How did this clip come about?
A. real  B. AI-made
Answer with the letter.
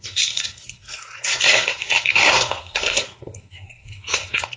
B